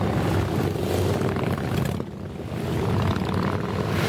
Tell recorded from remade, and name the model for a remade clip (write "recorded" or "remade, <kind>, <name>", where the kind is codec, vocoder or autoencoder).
recorded